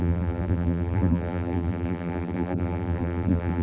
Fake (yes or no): yes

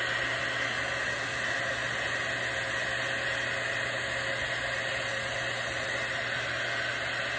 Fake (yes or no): no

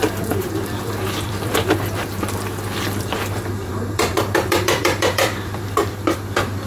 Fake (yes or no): yes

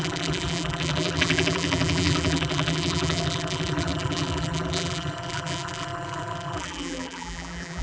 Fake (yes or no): yes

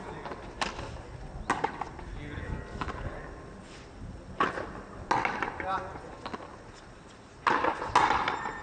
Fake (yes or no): no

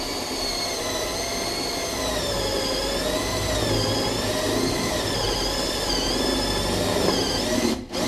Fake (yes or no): no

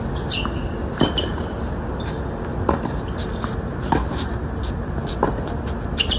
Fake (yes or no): no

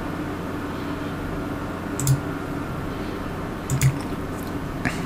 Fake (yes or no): no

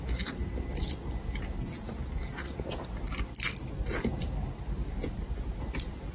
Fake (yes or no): yes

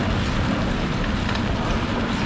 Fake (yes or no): no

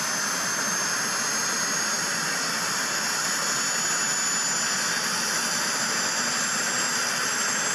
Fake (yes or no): no